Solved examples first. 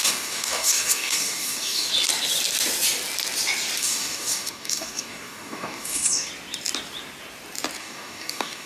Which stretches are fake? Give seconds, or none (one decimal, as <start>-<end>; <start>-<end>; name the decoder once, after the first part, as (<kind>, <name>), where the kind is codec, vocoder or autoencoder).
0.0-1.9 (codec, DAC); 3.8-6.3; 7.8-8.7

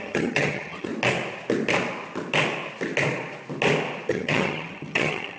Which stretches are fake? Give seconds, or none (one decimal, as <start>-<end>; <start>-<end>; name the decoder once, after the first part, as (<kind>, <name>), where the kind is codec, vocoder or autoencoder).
0.0-0.9 (vocoder, HiFi-GAN); 4.1-5.4

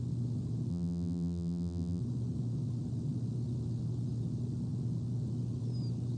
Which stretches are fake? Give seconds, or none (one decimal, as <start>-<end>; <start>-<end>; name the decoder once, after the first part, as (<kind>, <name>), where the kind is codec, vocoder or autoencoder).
0.7-2.0 (vocoder, BigVGAN v2)

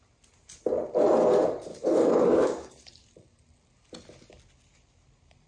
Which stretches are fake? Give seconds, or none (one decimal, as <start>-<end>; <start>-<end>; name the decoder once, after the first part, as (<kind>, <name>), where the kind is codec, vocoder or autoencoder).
1.7-2.7 (codec, DAC)

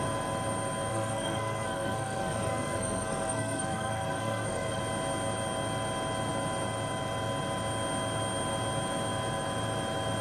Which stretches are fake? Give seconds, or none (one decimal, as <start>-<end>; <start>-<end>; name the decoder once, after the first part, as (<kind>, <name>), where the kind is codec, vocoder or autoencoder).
0.9-4.8 (codec, SNAC)